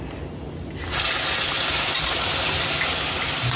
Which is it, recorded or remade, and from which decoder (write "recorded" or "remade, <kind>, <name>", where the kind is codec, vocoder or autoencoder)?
recorded